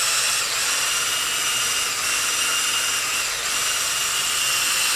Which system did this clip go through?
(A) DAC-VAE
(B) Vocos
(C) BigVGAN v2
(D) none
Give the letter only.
D